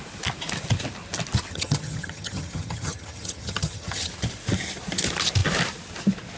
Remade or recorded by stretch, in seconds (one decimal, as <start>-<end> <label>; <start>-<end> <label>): 0.0-1.5 recorded; 1.5-4.1 remade; 4.1-6.4 recorded